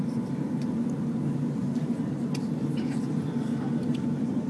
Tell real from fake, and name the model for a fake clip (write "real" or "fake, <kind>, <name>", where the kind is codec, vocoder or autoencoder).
real